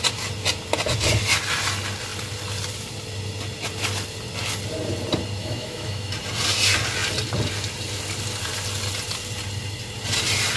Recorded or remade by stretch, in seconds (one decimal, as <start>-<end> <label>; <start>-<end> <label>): 0.0-5.4 recorded; 5.4-6.1 remade; 6.1-10.6 recorded